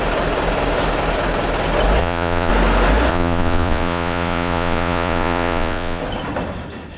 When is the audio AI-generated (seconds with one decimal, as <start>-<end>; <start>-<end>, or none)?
2.0-2.5; 3.1-6.0